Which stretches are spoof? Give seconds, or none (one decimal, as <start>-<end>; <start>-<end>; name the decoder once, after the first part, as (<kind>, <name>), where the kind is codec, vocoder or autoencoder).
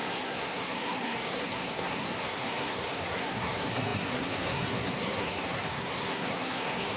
0.0-7.0 (codec, SNAC)